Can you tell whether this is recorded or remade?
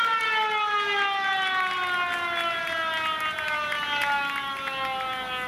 recorded